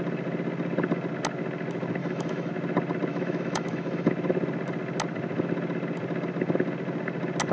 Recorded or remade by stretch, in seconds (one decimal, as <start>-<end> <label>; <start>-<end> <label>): 0.0-2.0 recorded; 2.0-2.5 remade; 2.5-3.1 recorded; 3.1-4.1 remade; 4.1-7.5 recorded